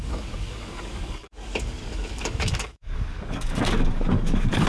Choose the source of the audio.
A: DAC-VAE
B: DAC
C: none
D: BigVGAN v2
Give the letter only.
B